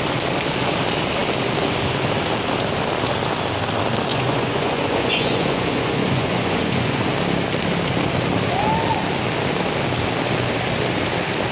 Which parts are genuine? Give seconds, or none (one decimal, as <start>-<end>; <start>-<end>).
0.0-4.1; 7.1-11.5